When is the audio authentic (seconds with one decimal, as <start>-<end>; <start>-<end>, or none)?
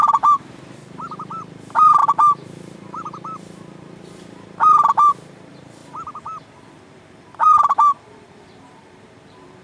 5.8-6.8